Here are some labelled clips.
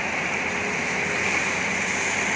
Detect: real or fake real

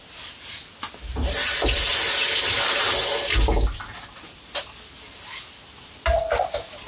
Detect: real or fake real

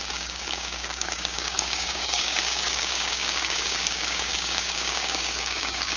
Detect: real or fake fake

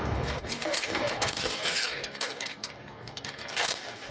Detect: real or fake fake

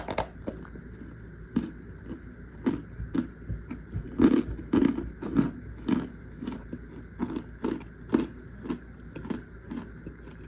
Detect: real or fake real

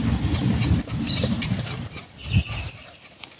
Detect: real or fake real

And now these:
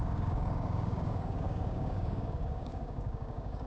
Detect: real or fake fake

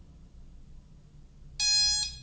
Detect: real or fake real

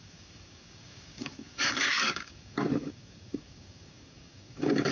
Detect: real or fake fake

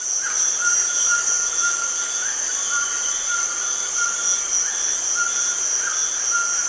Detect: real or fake real